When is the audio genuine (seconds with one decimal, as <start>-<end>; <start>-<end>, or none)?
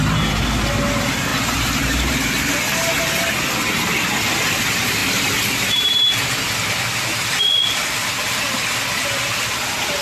0.0-1.3; 3.0-5.0; 6.1-10.0